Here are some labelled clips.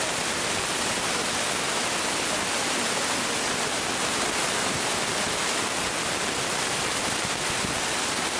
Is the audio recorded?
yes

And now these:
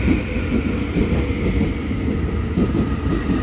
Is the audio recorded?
yes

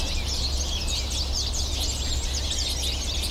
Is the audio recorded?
yes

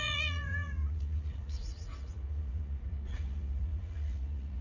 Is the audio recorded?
no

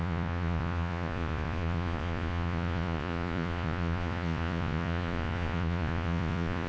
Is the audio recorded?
no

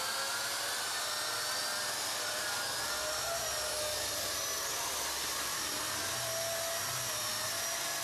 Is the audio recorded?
yes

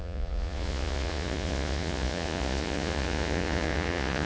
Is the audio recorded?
no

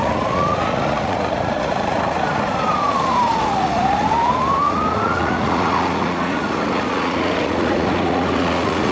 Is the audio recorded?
no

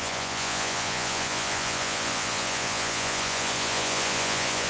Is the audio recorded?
no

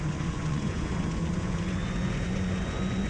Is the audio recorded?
no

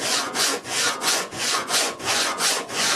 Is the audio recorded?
no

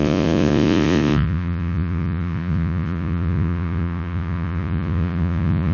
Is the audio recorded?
no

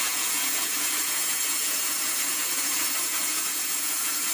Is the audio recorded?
no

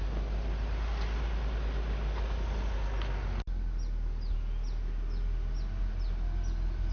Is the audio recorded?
yes